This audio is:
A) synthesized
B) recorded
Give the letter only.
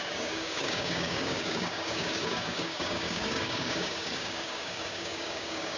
A